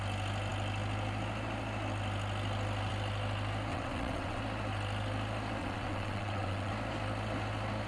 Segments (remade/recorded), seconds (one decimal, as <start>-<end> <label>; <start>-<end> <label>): 0.0-3.7 recorded; 3.7-4.4 remade; 4.4-5.6 recorded; 5.6-6.7 remade; 6.7-7.9 recorded

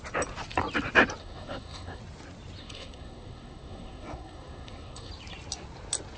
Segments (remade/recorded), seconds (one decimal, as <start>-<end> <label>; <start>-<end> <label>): 0.0-1.2 recorded; 1.2-2.0 remade; 2.0-2.6 recorded; 2.6-5.1 remade; 5.1-6.2 recorded

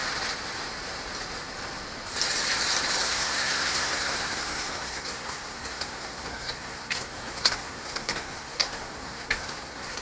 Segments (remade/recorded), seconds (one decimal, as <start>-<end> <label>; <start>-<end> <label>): 0.0-3.0 recorded; 3.0-10.0 remade

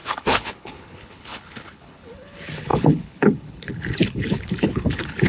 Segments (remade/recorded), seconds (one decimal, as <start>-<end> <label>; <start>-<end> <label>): 0.0-5.3 remade

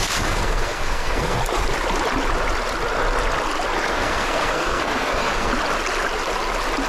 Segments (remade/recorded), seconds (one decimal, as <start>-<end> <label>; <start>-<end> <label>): 0.0-1.4 remade; 1.4-3.9 recorded; 3.9-5.5 remade; 5.5-6.9 recorded

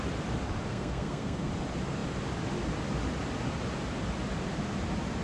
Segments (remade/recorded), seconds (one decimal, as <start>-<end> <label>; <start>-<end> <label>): 0.0-0.7 recorded; 0.7-1.5 remade; 1.5-5.2 recorded